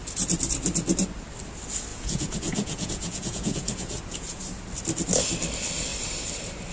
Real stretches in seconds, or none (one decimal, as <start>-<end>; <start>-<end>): 0.0-1.9; 4.4-6.7